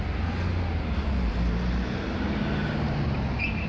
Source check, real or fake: real